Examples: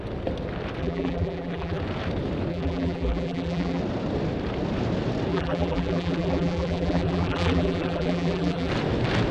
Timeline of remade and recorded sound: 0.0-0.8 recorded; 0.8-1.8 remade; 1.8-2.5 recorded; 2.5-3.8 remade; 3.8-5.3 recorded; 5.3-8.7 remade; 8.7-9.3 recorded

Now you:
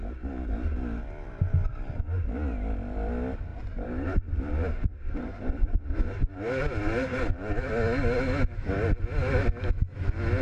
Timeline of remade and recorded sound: 0.0-3.5 recorded; 3.5-7.7 remade; 7.7-10.4 recorded

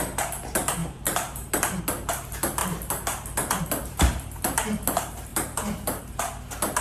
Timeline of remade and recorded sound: 0.0-0.8 recorded; 0.8-1.8 remade; 1.8-5.3 recorded; 5.3-6.0 remade; 6.0-6.8 recorded

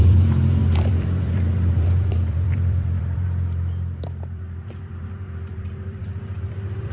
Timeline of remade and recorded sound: 0.0-6.9 remade

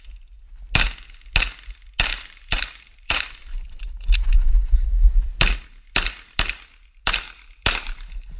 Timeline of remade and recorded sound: 0.0-2.1 recorded; 2.1-3.2 remade; 3.2-8.4 recorded